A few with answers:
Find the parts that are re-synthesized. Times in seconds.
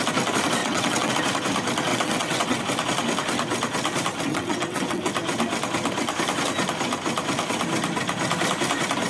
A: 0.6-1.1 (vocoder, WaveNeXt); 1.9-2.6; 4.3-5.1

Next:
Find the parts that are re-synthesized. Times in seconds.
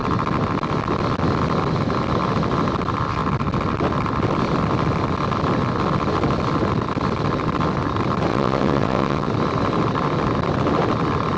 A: 8.3-9.3 (vocoder, WaveNeXt)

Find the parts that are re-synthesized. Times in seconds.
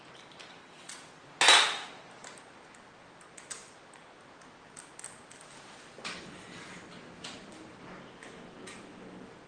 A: 0.6-1.3 (vocoder, WaveNeXt)